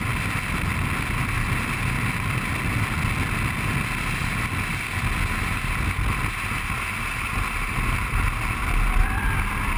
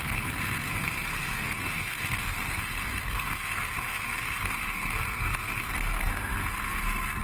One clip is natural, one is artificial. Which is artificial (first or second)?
second